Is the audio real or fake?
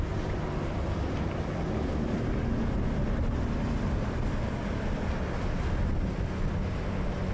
real